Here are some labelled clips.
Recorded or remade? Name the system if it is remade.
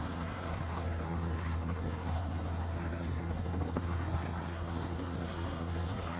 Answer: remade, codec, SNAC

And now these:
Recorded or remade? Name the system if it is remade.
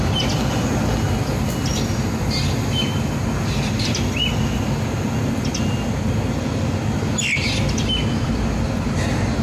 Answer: recorded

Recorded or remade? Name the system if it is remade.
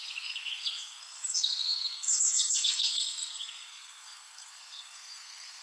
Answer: remade, codec, SNAC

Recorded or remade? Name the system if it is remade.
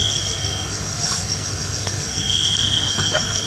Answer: remade, codec, SNAC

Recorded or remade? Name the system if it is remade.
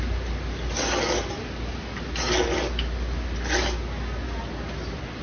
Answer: recorded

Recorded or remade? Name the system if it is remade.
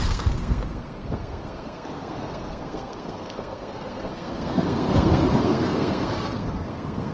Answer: remade, codec, SNAC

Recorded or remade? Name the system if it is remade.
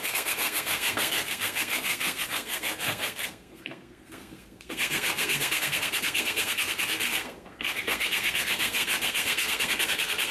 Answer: remade, codec, SNAC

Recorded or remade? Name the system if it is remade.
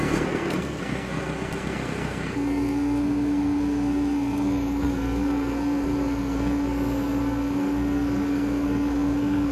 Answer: remade, codec, SNAC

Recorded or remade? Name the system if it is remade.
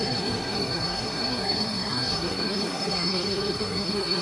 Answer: remade, codec, SNAC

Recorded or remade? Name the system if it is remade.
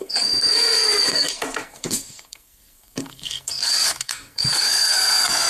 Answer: remade, codec, SNAC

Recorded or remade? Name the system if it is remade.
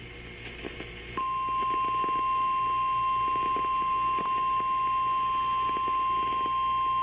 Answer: recorded